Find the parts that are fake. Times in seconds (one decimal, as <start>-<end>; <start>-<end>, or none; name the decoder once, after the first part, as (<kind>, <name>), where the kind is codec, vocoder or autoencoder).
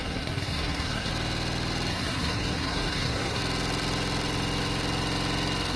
0.0-1.1 (codec, SNAC); 1.9-3.4